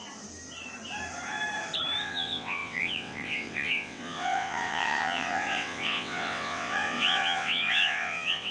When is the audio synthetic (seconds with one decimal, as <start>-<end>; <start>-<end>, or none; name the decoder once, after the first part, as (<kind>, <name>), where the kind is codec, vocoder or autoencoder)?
2.0-8.5 (vocoder, WaveNeXt)